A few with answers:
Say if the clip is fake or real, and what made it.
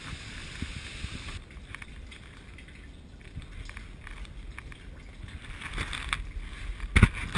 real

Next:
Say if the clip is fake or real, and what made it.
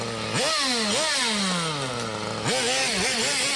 real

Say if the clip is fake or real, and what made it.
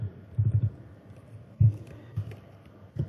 real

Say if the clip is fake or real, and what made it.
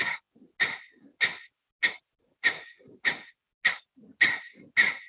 real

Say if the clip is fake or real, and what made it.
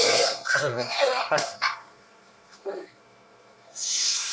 fake, codec, SNAC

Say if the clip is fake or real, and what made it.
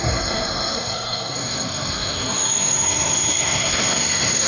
fake, codec, SNAC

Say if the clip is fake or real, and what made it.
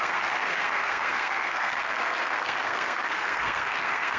fake, codec, SNAC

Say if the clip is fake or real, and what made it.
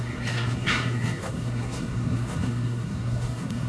fake, codec, SNAC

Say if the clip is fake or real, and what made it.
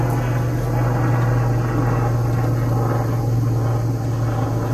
real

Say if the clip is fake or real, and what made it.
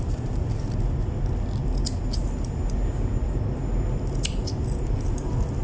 real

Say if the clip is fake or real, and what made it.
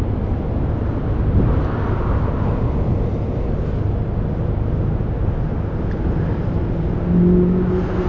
real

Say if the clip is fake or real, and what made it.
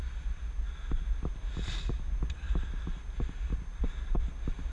real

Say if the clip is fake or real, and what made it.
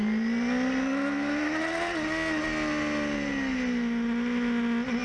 real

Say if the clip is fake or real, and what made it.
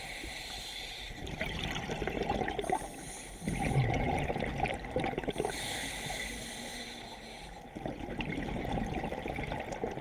real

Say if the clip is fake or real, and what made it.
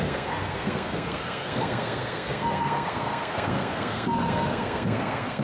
fake, codec, SNAC